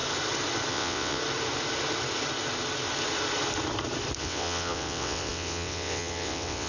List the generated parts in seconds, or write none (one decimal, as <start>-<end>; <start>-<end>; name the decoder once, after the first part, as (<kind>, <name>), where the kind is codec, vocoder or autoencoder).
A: 0.7-1.2 (vocoder, WaveNeXt); 4.2-6.7